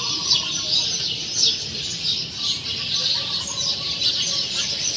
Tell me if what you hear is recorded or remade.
recorded